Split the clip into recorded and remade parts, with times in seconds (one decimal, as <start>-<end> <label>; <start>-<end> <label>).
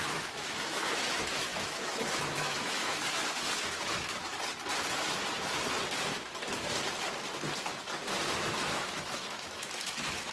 0.0-4.2 remade; 4.2-8.7 recorded; 8.7-10.3 remade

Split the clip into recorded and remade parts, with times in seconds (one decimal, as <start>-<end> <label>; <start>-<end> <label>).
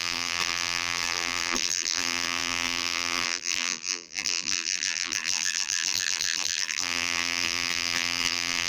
0.0-8.7 remade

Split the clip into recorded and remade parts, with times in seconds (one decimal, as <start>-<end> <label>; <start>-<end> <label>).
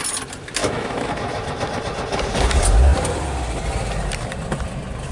0.0-0.6 recorded; 0.6-1.1 remade; 1.1-5.1 recorded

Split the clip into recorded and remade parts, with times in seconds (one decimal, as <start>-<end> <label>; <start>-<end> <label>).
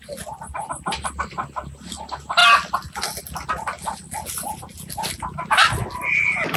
0.0-6.6 recorded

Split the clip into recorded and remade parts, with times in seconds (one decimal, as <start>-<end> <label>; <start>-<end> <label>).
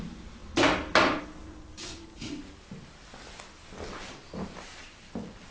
0.0-0.4 remade; 0.4-1.2 recorded; 1.2-5.5 remade